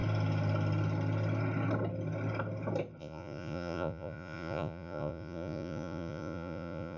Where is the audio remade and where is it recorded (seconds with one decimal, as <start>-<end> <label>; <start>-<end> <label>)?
0.0-3.0 recorded; 3.0-7.0 remade